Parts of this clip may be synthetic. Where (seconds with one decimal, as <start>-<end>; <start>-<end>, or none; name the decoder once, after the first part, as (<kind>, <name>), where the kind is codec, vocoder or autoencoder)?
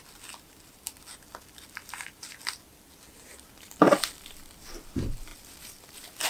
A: 1.1-3.8 (vocoder, BigVGAN v2); 5.3-5.8